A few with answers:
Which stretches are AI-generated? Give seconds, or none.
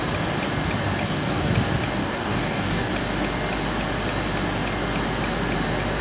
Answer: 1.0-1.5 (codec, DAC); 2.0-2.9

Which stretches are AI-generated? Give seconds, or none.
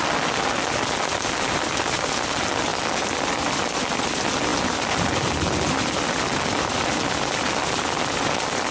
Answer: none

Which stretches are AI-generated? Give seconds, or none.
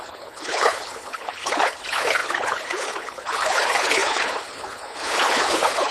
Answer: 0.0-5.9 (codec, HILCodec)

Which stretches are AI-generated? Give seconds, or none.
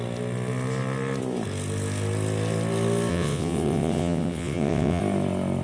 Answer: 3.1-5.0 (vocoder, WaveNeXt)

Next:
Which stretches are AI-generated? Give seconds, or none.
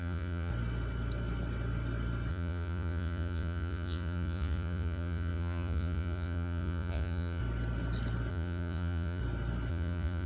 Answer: 0.0-0.5 (vocoder, Vocos); 2.3-7.4; 8.3-9.2; 9.7-10.3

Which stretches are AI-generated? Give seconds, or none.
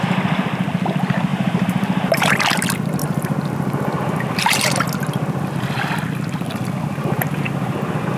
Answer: 1.3-2.4 (vocoder, BigVGAN v2); 3.0-5.5